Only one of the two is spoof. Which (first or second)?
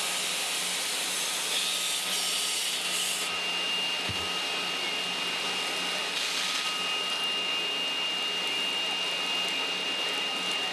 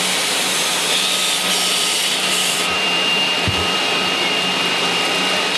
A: second